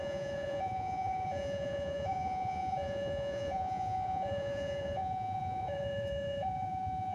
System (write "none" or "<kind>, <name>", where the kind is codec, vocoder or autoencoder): vocoder, Vocos